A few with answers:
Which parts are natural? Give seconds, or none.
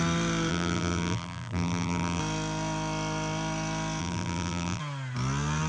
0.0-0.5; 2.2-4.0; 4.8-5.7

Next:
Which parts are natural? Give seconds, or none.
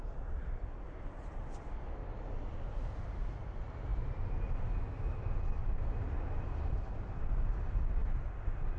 0.0-3.9; 4.7-8.8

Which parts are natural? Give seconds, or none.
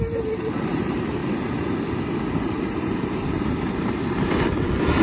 1.2-2.3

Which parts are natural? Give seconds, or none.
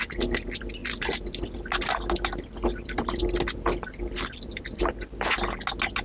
0.0-6.0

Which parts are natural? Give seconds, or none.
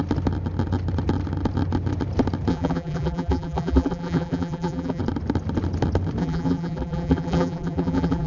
0.0-2.5; 5.0-6.2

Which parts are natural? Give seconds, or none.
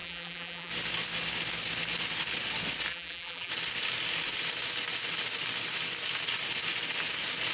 0.7-2.9; 3.5-7.5